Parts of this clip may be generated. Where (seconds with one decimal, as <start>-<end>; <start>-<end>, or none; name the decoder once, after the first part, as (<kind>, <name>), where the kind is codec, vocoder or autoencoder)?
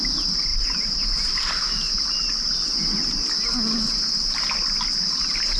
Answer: none